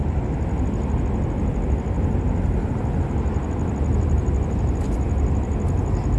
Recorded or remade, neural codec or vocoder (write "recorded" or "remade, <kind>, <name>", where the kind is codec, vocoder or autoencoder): recorded